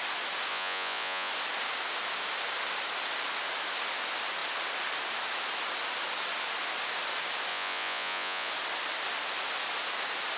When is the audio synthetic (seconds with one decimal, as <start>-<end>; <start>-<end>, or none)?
0.5-1.3; 7.5-8.5